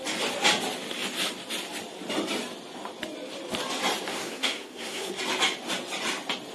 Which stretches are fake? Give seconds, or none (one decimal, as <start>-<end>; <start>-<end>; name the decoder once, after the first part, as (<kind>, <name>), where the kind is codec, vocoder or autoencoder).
4.1-5.2 (codec, SNAC)